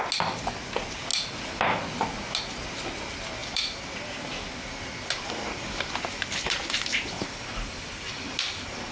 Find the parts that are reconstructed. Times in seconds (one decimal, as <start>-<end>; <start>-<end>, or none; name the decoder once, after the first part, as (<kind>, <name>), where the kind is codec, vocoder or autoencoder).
3.4-8.9 (vocoder, BigVGAN v2)